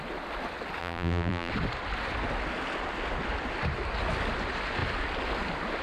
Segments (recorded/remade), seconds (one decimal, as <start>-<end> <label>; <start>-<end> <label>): 0.0-0.8 recorded; 0.8-1.5 remade; 1.5-5.8 recorded